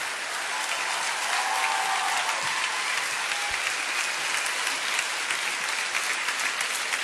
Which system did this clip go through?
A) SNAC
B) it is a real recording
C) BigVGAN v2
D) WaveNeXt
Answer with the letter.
B